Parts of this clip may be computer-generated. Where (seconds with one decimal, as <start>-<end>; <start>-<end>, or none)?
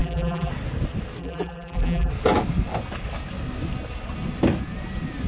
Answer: 0.0-0.5; 1.2-2.1